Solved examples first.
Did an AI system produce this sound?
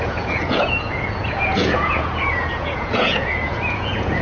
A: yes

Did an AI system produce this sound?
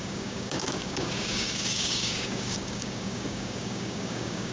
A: yes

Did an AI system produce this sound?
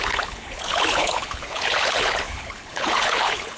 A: yes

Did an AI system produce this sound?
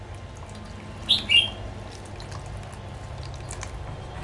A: no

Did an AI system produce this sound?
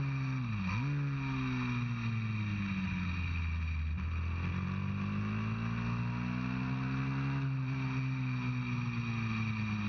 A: no